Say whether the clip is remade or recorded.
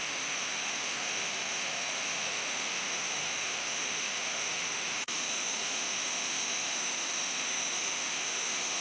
remade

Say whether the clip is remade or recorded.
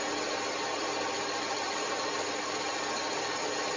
recorded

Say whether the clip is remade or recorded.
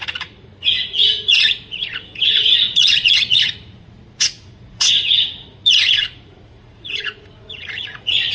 remade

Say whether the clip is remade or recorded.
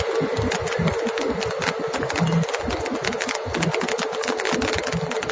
recorded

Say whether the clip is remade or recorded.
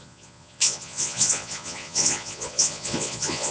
remade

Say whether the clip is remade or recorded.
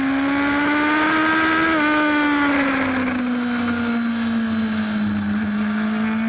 recorded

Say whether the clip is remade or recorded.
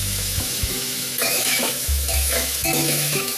remade